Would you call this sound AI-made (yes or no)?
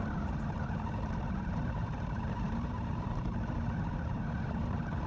yes